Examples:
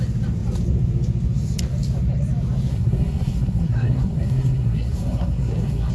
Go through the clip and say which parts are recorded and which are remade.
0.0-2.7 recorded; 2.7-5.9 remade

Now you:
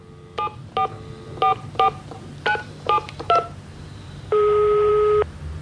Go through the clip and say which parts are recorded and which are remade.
0.0-1.5 recorded; 1.5-4.9 remade; 4.9-5.6 recorded

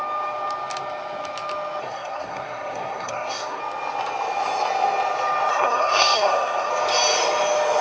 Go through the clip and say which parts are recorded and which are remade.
0.0-1.8 recorded; 1.8-3.6 remade; 3.6-5.5 recorded; 5.5-6.7 remade; 6.7-7.8 recorded

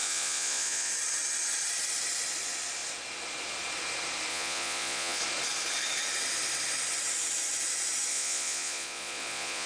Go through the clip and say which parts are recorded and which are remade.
0.0-0.9 remade; 0.9-4.3 recorded; 4.3-5.2 remade; 5.2-8.1 recorded; 8.1-9.7 remade

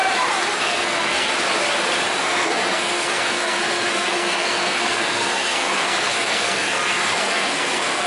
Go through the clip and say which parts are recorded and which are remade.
0.0-0.6 recorded; 0.6-1.3 remade; 1.3-2.2 recorded; 2.2-8.1 remade

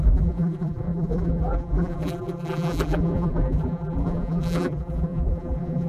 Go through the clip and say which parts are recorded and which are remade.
0.0-5.9 remade

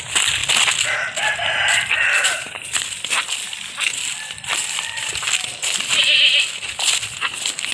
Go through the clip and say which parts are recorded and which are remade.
0.0-7.7 recorded

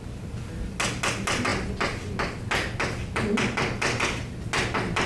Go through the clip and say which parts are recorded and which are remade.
0.0-5.1 recorded